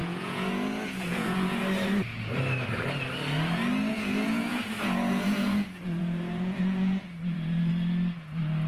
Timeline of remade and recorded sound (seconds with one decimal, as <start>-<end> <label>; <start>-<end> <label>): 0.0-1.6 remade; 1.6-3.9 recorded; 3.9-7.7 remade; 7.7-8.7 recorded